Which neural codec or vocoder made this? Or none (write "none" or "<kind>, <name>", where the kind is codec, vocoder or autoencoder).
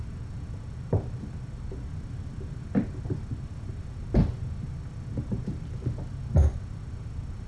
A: none